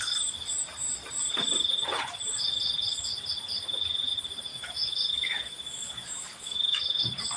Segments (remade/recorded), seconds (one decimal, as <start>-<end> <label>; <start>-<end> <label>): 0.0-4.5 recorded; 4.5-7.0 remade; 7.0-7.4 recorded